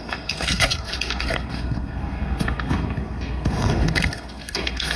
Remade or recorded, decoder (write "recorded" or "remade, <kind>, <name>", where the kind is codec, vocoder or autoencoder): remade, codec, SNAC